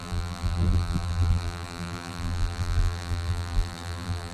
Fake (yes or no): yes